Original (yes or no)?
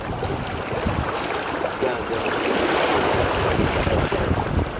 yes